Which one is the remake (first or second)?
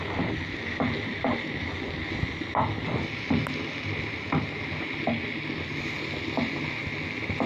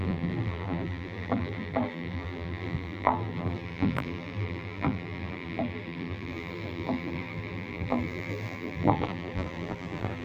second